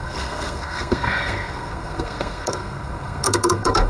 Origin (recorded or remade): remade